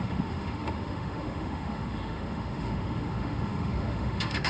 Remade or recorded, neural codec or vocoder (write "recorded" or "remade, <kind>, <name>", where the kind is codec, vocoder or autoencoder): remade, autoencoder, DAC-VAE